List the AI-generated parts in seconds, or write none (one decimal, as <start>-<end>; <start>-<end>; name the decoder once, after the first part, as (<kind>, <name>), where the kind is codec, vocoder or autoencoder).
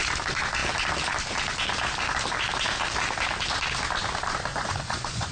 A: 4.5-5.3 (vocoder, Vocos)